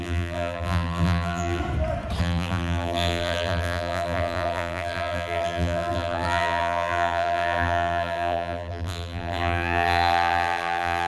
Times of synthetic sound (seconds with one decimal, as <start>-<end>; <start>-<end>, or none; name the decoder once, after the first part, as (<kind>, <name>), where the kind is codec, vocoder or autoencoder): 0.0-1.6 (vocoder, BigVGAN v2); 2.2-11.1